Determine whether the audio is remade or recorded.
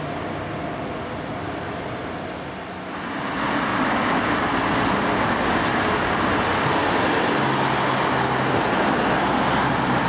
recorded